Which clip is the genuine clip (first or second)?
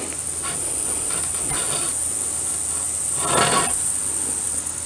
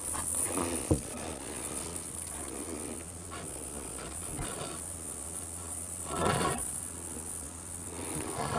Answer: first